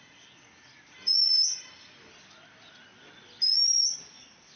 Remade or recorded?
recorded